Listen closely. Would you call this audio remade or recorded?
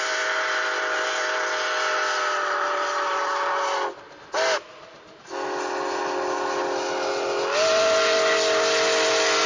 recorded